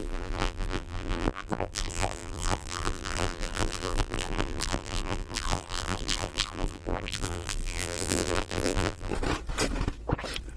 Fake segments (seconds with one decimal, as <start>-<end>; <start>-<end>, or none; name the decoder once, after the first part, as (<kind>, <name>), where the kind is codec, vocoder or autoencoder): 0.0-9.1 (vocoder, BigVGAN v2)